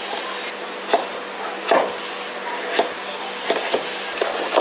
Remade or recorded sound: recorded